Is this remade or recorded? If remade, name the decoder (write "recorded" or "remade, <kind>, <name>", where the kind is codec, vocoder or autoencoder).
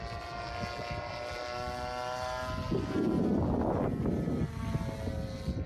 recorded